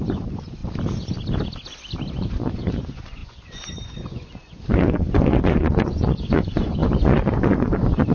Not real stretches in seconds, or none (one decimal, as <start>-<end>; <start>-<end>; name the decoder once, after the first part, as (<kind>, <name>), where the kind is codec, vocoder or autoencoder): 0.0-0.6 (vocoder, Vocos); 2.1-8.1

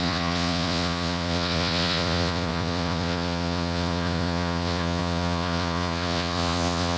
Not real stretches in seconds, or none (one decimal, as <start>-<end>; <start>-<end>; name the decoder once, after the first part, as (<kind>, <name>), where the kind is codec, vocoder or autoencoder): 0.0-7.0 (vocoder, Vocos)

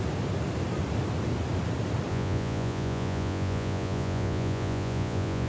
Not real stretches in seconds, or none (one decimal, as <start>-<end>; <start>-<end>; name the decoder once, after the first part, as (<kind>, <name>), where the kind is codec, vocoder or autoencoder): 2.1-5.5 (vocoder, Vocos)

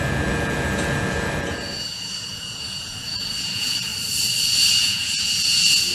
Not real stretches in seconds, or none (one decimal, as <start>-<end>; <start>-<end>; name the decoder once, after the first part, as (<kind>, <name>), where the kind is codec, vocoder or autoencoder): 0.0-3.9 (vocoder, Vocos); 4.8-5.9

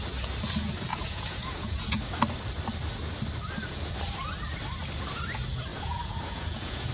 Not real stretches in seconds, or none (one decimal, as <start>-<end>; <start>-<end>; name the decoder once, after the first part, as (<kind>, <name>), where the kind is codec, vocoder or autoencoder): 0.9-2.0 (vocoder, Vocos); 5.7-6.9